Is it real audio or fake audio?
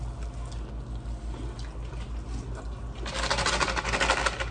real